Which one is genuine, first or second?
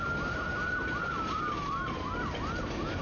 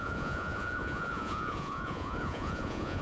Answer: first